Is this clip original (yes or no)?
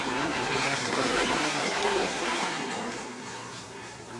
no